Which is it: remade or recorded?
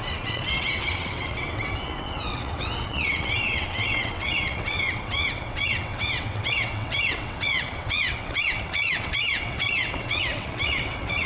remade